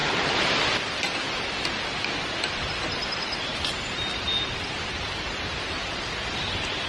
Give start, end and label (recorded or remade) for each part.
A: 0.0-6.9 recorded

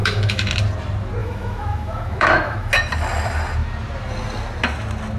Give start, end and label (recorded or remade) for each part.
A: 0.0-0.5 remade; 0.5-1.2 recorded; 1.2-2.7 remade; 2.7-5.2 recorded

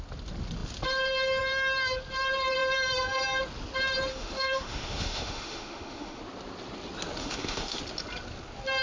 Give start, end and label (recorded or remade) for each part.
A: 0.0-4.1 recorded; 4.1-6.2 remade; 6.2-7.2 recorded; 7.2-7.8 remade; 7.8-8.8 recorded

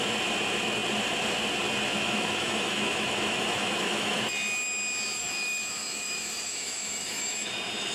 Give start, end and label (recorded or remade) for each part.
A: 0.0-1.9 recorded; 1.9-4.2 remade; 4.2-5.2 recorded; 5.2-7.5 remade; 7.5-7.9 recorded